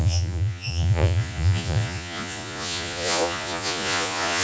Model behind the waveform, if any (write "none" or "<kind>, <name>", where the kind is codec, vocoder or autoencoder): vocoder, Vocos